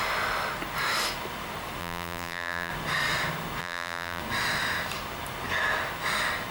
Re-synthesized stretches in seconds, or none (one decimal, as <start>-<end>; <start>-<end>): 1.8-2.7; 3.6-4.2